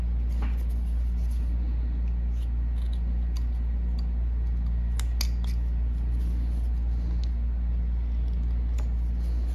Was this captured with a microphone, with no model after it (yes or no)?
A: yes